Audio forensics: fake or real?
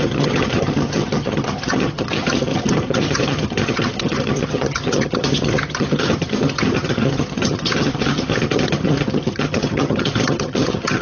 fake